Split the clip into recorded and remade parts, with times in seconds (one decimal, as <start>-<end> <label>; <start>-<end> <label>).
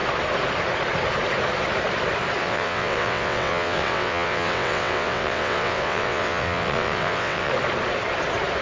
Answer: 0.0-2.4 recorded; 2.4-7.5 remade; 7.5-8.6 recorded